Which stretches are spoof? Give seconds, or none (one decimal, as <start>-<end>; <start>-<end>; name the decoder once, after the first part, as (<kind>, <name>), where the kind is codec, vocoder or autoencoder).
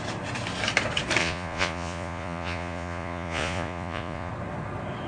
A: 1.2-4.3 (vocoder, Vocos)